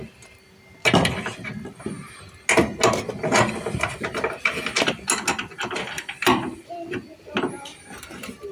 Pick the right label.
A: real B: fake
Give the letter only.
A